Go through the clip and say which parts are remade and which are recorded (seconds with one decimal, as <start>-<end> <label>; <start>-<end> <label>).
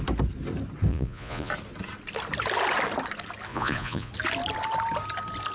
0.0-0.9 recorded; 0.9-1.5 remade; 1.5-3.5 recorded; 3.5-4.1 remade; 4.1-5.5 recorded